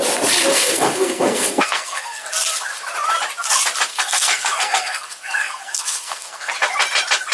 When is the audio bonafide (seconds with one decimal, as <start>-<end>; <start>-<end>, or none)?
0.0-0.5; 2.3-3.9; 6.5-7.3